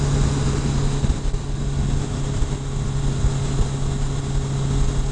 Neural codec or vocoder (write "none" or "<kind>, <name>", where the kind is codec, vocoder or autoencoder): none